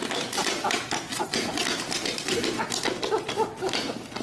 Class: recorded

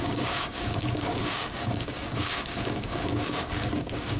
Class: remade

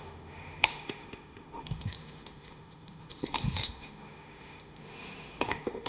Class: remade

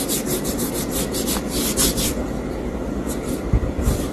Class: recorded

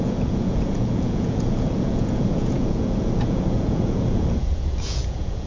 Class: remade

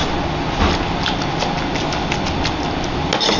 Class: recorded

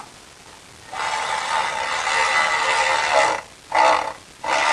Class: recorded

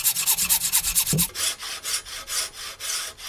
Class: recorded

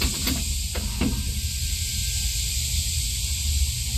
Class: recorded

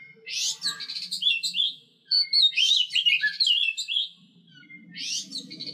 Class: recorded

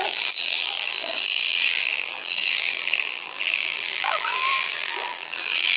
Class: remade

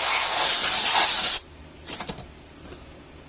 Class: recorded